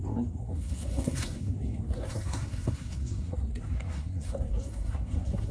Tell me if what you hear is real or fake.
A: fake